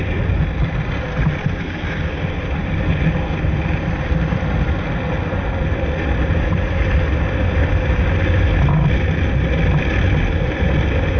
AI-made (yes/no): no